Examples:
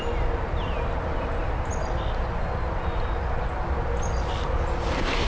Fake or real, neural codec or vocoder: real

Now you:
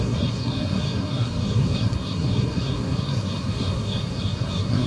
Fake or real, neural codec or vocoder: fake, codec, SNAC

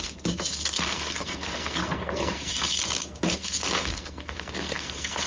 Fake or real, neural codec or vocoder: fake, codec, SNAC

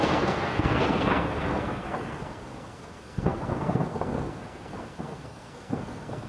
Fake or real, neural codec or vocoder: fake, codec, SNAC